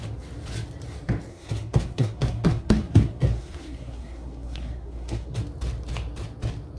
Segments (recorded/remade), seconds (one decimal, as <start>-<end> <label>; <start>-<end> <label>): 0.0-1.3 recorded; 1.3-5.4 remade; 5.4-6.8 recorded